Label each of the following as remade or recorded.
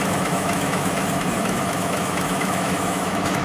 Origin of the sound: remade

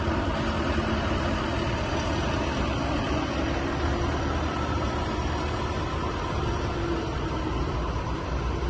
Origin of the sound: recorded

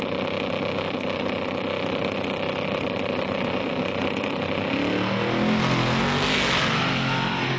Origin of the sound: recorded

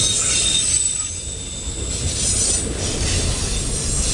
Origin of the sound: recorded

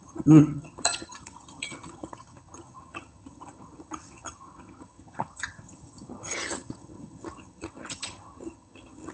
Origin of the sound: remade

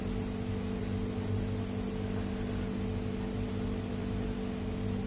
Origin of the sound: recorded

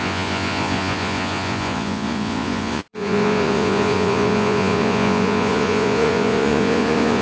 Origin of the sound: remade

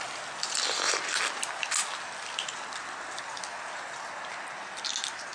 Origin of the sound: recorded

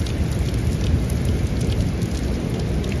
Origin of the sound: recorded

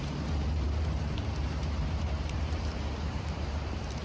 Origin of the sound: remade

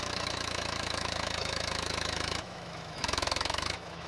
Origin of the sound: remade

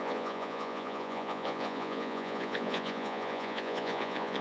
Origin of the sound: remade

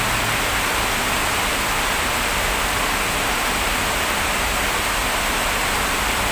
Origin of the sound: recorded